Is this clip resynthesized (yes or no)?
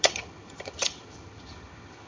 yes